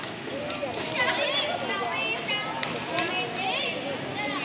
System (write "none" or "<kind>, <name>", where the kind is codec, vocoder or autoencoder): none